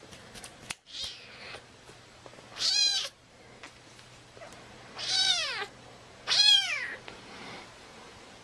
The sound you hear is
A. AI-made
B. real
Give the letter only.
A